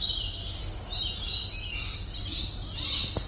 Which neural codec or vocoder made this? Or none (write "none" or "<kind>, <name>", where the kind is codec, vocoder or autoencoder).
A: none